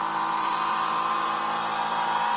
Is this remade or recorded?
remade